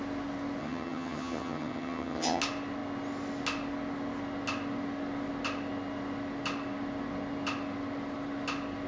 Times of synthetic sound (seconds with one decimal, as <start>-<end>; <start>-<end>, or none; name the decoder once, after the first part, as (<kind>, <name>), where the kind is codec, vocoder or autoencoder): 0.6-2.4 (vocoder, HiFi-GAN)